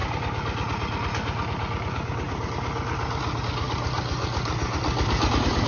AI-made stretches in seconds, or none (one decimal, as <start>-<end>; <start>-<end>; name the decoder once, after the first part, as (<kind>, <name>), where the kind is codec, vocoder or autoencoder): none